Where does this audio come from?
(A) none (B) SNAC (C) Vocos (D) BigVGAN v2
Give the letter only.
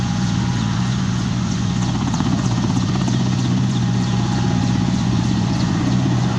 C